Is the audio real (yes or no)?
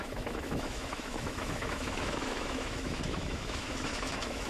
no